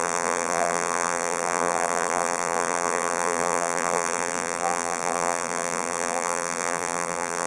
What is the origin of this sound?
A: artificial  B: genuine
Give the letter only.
A